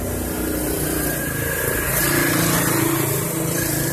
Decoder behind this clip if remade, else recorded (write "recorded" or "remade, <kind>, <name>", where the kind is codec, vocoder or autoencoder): recorded